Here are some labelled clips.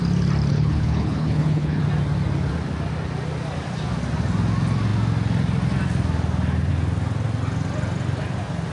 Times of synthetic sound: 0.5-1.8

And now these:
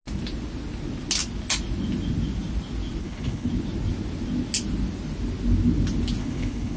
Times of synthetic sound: 3.0-3.5; 6.2-6.8

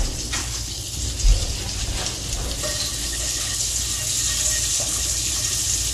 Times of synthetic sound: 0.4-1.0; 3.0-3.8; 4.7-5.3